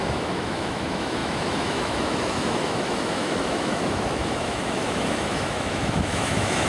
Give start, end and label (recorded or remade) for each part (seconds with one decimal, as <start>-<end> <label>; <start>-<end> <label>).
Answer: 0.0-6.7 remade